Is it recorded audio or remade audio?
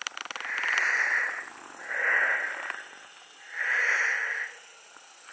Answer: recorded